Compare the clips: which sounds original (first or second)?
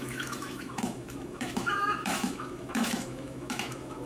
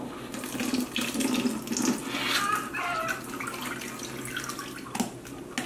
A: second